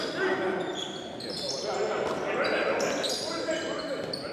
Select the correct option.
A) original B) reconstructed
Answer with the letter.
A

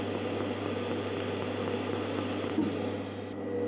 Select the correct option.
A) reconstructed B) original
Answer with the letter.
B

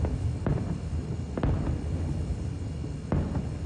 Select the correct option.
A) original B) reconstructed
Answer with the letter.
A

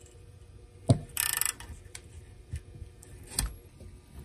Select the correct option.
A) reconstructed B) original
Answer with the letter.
B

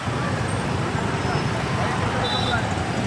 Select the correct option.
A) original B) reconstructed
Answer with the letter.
A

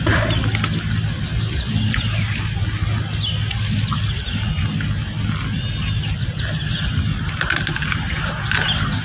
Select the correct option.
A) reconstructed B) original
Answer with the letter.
B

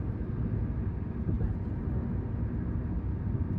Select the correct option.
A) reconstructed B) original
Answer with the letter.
B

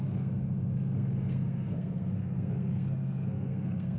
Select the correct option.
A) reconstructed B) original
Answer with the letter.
A